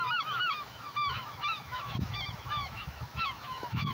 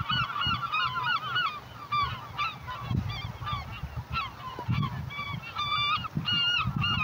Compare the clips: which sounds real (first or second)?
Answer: second